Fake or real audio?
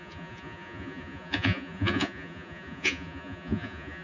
fake